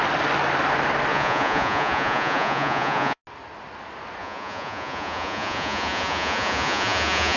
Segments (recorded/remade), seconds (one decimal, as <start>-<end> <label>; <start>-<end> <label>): 0.0-1.1 recorded; 1.1-3.2 remade; 3.2-4.2 recorded; 4.2-7.4 remade